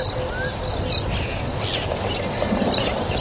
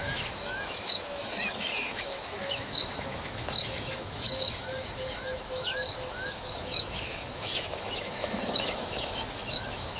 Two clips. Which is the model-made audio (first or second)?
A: second